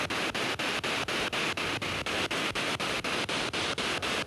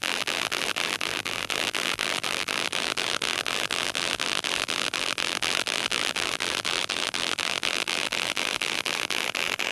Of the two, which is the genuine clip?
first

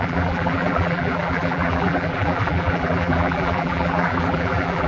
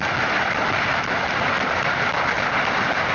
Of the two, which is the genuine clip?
second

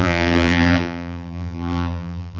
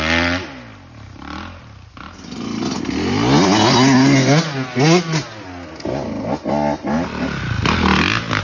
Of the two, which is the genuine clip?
second